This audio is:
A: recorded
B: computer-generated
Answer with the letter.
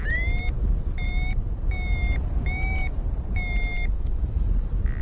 A